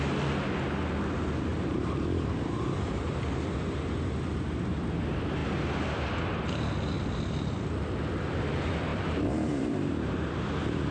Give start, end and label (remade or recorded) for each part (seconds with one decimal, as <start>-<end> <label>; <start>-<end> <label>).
0.0-1.5 recorded; 1.5-3.3 remade; 3.3-8.9 recorded; 8.9-10.3 remade; 10.3-10.9 recorded